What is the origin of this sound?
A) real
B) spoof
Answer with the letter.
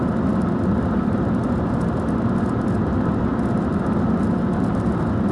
A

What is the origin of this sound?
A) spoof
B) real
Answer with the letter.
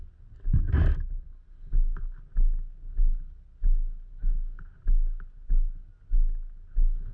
B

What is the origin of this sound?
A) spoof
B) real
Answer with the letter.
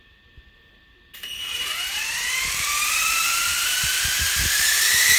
A